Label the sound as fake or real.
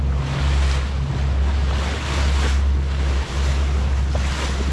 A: real